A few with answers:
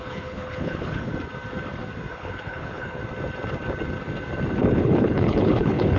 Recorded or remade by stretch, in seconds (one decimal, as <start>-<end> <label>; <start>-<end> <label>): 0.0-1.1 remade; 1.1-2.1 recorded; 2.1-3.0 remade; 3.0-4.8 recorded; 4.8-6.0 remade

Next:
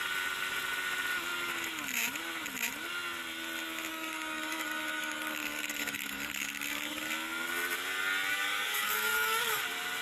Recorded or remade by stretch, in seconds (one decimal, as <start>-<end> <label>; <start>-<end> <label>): 0.0-3.9 recorded; 3.9-7.0 remade; 7.0-8.3 recorded; 8.3-9.6 remade; 9.6-10.0 recorded

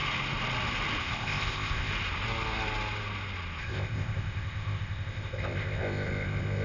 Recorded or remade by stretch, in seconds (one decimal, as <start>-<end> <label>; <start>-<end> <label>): 0.0-1.0 recorded; 1.0-1.9 remade; 1.9-3.6 recorded; 3.6-6.6 remade